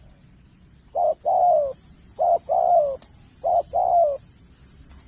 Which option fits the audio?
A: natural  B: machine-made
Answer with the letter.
A